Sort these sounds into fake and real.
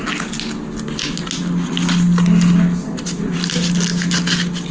real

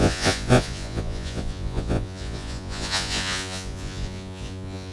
fake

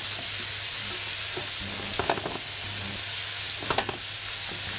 real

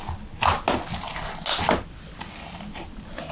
real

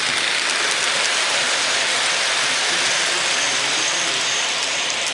real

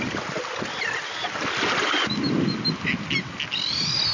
real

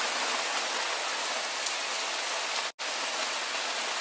real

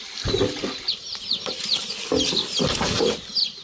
real